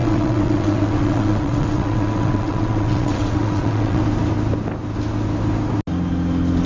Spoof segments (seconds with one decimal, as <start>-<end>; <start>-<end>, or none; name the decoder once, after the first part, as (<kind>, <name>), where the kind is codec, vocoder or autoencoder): 0.0-4.0 (vocoder, WaveNeXt)